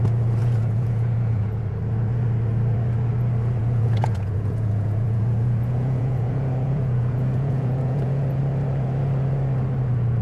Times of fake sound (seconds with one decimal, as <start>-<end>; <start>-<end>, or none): 0.4-1.6; 3.6-8.4